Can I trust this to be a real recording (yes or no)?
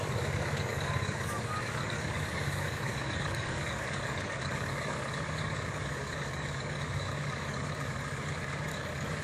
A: no